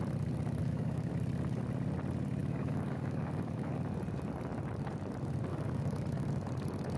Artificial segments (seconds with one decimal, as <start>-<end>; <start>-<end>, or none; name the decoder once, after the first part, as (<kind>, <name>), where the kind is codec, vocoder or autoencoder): 0.6-1.1 (codec, DAC); 2.4-3.7; 5.5-6.3